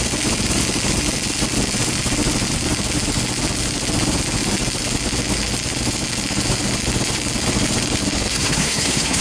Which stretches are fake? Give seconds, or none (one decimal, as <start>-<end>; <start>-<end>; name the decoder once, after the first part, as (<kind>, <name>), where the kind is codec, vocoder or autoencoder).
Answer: 8.3-9.2 (codec, SNAC)